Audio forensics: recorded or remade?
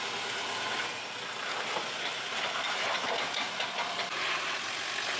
recorded